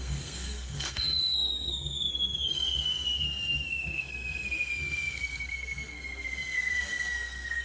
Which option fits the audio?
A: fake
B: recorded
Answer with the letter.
A